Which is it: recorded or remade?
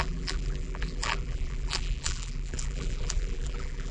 remade